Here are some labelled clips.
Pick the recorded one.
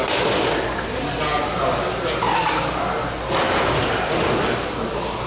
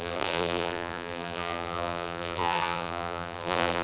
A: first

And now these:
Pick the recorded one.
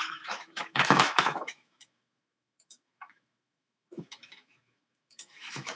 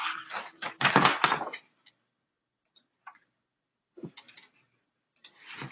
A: second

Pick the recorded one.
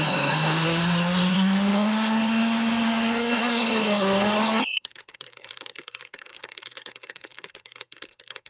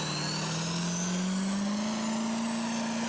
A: second